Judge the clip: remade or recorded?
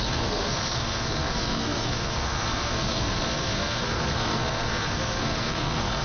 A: remade